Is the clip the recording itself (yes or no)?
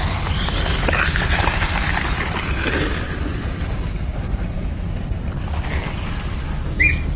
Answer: yes